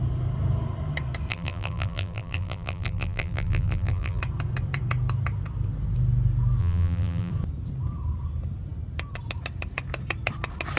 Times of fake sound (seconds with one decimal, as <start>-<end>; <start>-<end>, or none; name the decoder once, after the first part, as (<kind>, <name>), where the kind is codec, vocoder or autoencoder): 1.3-4.2 (vocoder, BigVGAN v2); 6.6-7.3